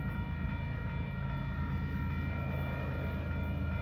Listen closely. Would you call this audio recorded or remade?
recorded